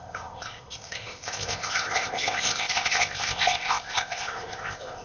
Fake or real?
fake